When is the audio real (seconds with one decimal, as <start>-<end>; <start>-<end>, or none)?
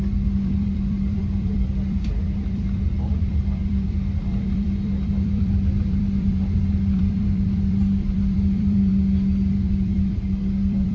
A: 8.9-9.5